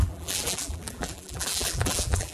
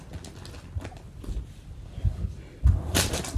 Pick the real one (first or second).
second